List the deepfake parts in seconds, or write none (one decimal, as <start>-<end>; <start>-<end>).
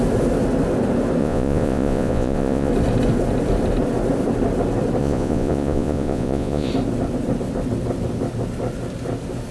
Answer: 1.2-2.7; 5.0-6.7